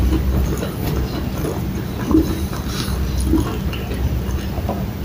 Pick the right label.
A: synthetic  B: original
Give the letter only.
B